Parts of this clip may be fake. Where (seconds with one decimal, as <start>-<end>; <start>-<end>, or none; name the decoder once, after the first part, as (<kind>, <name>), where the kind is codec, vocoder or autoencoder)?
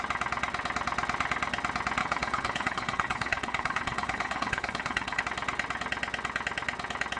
2.0-5.2 (codec, HILCodec)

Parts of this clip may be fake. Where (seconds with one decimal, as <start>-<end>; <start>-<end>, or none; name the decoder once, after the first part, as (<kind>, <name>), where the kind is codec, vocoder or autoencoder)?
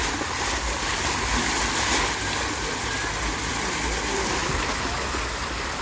none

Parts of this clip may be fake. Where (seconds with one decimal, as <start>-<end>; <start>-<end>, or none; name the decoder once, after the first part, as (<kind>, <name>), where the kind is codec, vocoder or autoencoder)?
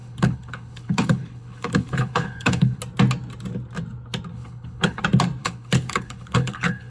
0.0-2.8 (codec, HILCodec); 4.3-5.0; 5.4-6.9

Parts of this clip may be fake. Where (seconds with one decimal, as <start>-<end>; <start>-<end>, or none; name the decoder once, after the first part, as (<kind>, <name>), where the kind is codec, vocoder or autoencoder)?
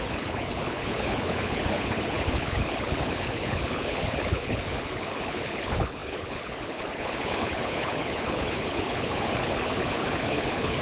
0.0-10.8 (codec, HILCodec)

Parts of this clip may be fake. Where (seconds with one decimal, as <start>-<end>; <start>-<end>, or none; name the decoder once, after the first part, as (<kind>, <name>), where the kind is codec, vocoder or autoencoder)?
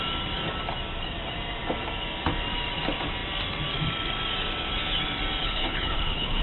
5.4-6.4 (codec, HILCodec)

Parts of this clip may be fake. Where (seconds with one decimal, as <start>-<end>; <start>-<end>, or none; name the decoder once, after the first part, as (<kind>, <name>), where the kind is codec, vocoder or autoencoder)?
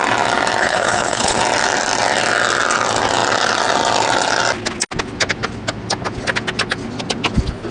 0.6-1.4 (codec, HILCodec)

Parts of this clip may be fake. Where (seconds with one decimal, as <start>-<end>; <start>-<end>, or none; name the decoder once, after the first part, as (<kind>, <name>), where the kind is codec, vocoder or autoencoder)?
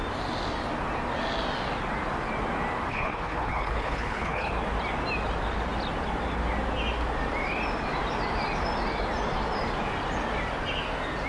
2.9-4.5 (codec, HILCodec)